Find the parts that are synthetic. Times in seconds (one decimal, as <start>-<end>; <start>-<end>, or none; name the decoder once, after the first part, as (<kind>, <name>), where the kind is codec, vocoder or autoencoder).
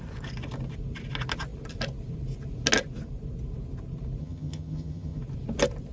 4.2-5.2 (vocoder, HiFi-GAN)